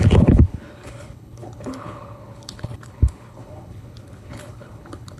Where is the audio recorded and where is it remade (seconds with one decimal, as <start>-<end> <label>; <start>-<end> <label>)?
0.0-5.2 remade